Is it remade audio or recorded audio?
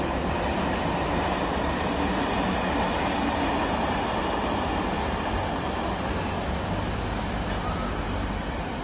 recorded